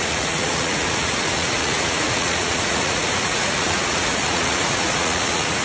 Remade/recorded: remade